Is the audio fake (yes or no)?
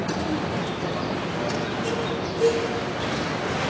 no